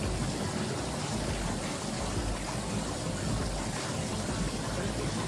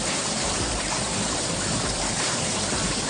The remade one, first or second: second